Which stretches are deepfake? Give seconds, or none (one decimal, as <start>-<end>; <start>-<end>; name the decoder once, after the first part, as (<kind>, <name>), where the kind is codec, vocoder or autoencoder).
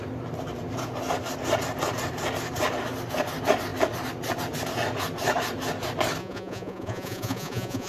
6.2-7.9 (vocoder, Vocos)